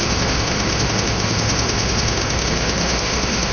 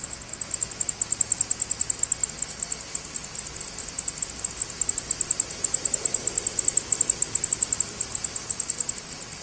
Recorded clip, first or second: second